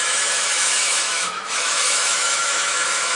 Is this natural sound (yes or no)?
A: no